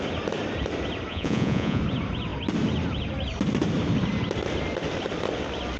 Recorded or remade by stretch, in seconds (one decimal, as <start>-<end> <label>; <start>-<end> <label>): 0.0-1.1 recorded; 1.1-1.8 remade; 1.8-5.8 recorded